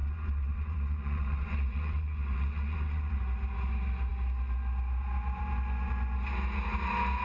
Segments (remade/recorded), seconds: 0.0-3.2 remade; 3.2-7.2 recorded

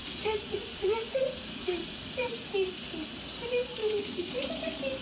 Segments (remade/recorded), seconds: 0.0-2.5 remade; 2.5-3.8 recorded; 3.8-4.3 remade; 4.3-5.0 recorded

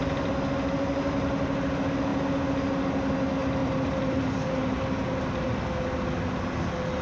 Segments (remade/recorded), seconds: 0.0-3.6 recorded; 3.6-5.6 remade; 5.6-7.0 recorded

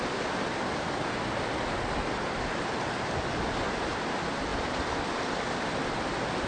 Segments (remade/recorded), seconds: 0.0-6.5 recorded

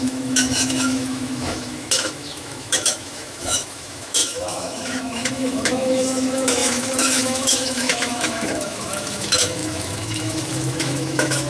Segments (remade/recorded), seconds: 0.0-11.5 remade